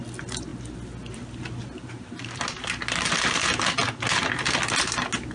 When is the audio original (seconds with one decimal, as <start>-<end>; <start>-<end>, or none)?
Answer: 0.0-5.3